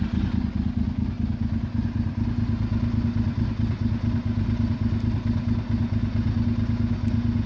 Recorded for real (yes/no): yes